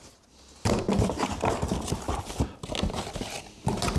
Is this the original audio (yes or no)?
yes